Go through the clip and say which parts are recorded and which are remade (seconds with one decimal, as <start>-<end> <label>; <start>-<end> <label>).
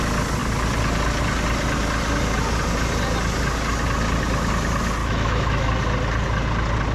0.0-5.0 recorded; 5.0-5.7 remade; 5.7-6.9 recorded